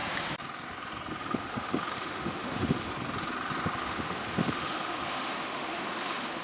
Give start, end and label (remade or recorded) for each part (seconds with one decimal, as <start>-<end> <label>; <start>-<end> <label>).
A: 0.0-1.2 recorded; 1.2-2.9 remade; 2.9-3.8 recorded; 3.8-6.4 remade